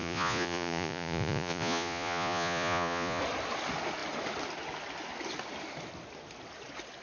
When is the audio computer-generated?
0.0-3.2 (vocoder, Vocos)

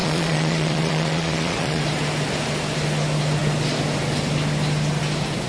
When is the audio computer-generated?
0.0-1.8 (vocoder, Vocos)